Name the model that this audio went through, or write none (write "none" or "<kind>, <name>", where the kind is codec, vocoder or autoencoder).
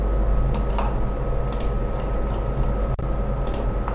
none